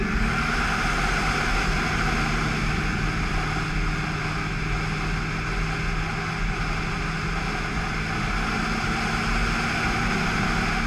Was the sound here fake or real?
real